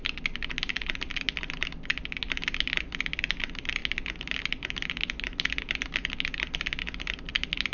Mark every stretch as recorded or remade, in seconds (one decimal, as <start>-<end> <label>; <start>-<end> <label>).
0.0-7.7 recorded